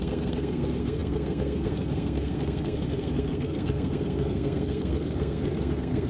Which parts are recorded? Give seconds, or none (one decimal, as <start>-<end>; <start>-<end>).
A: none